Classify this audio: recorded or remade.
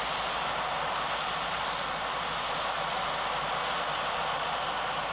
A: recorded